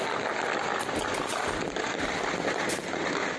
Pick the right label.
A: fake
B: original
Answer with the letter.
B